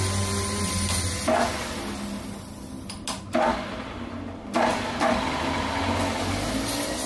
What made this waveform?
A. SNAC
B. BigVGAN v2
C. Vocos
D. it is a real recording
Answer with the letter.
D